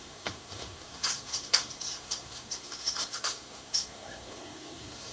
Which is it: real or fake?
fake